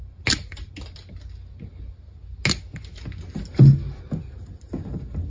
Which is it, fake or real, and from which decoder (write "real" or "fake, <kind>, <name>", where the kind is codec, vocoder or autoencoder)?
real